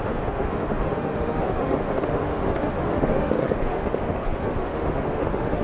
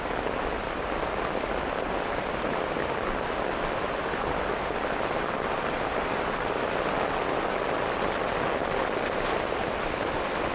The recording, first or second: second